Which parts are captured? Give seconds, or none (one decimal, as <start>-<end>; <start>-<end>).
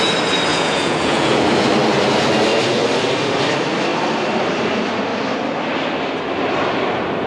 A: 0.0-0.5; 1.7-7.3